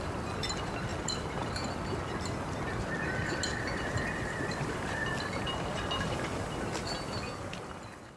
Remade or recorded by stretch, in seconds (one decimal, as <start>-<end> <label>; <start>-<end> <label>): 0.0-0.9 recorded; 0.9-1.5 remade; 1.5-3.5 recorded; 3.5-7.5 remade; 7.5-8.2 recorded